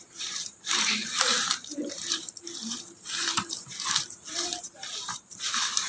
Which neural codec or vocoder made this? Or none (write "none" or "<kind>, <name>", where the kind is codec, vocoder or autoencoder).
vocoder, BigVGAN v2